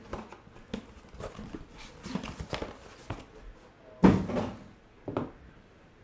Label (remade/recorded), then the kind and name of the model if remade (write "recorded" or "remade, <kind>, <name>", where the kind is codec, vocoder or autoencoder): recorded